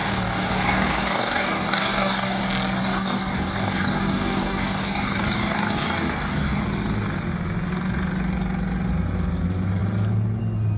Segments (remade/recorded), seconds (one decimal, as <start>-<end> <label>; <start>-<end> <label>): 0.0-2.4 remade; 2.4-2.8 recorded; 2.8-6.6 remade; 6.6-10.8 recorded